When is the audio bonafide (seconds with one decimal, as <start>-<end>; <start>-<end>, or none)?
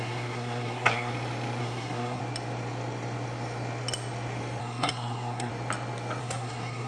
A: 1.1-1.6; 2.2-4.6; 5.5-6.2